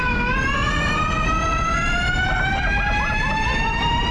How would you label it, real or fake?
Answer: real